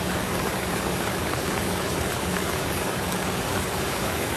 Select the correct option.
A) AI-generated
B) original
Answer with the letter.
A